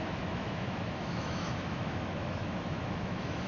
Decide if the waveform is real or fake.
fake